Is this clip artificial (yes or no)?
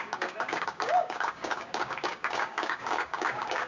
yes